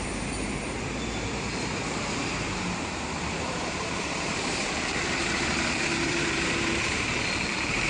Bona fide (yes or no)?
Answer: no